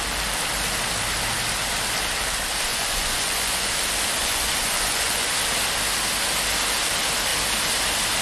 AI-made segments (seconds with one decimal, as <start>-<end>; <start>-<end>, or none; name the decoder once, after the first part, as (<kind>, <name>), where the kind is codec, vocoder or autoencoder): 2.7-3.7 (vocoder, Vocos); 4.2-5.3